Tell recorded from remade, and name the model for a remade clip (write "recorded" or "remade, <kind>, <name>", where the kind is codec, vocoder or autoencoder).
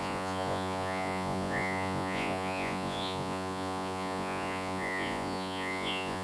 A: remade, vocoder, Vocos